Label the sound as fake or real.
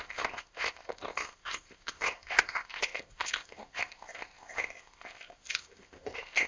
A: fake